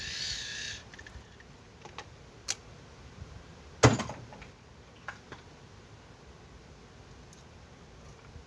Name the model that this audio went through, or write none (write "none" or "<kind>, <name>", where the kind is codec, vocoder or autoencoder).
none